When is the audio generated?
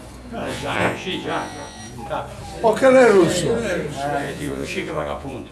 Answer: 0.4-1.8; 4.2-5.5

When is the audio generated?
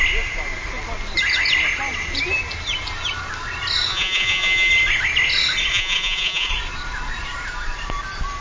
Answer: 3.9-4.7; 5.7-6.5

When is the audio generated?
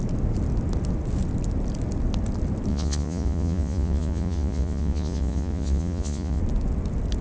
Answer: 2.7-6.4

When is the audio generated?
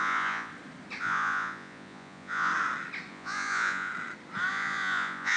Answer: 0.0-0.5; 1.0-2.5; 3.1-3.9; 4.5-5.4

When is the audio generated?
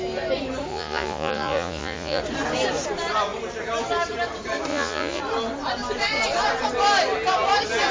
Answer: 0.7-2.2; 4.7-5.2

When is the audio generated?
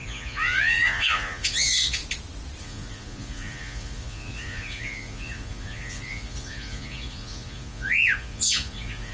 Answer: 0.0-2.0; 2.6-9.1